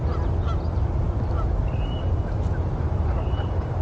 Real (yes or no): yes